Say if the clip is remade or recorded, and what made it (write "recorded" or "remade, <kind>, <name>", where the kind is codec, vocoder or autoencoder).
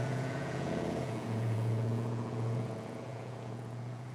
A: remade, vocoder, Vocos